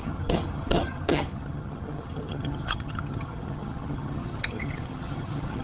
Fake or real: fake